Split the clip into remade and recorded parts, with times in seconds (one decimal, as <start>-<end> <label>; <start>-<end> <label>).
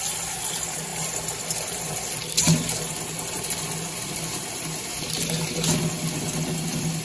0.0-7.0 recorded